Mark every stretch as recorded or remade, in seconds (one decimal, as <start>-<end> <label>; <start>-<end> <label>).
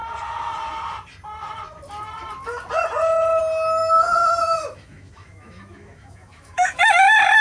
0.0-3.8 recorded; 3.8-6.8 remade; 6.8-7.4 recorded